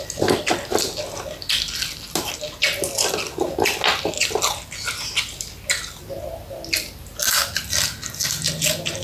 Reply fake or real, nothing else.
real